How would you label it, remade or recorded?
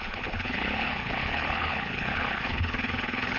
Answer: remade